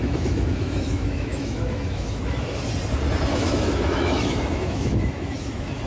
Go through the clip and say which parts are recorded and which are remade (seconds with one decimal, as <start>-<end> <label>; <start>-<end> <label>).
0.0-2.7 remade; 2.7-3.3 recorded; 3.3-5.9 remade